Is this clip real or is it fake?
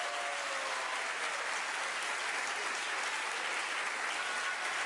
real